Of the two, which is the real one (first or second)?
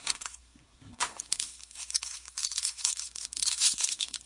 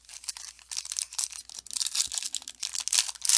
second